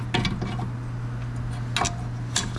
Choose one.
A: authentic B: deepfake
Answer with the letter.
A